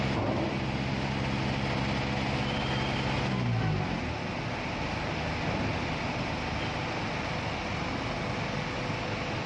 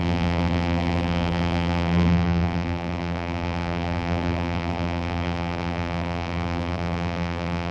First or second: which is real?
first